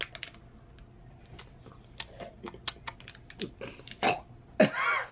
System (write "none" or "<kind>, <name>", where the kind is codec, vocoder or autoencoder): none